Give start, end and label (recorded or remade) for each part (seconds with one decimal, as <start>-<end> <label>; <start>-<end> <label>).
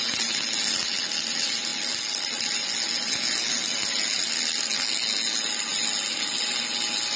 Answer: 0.0-7.2 recorded